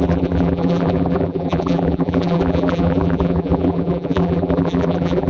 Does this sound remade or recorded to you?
remade